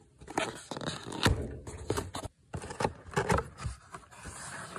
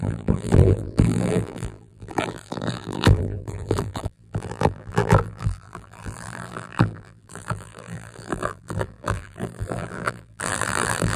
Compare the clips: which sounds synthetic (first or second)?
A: second